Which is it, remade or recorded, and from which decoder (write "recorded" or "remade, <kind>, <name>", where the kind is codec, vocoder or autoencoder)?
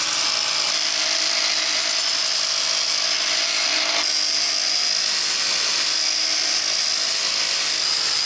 recorded